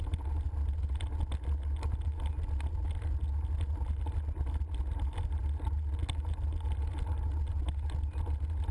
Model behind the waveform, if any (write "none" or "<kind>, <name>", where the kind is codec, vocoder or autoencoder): none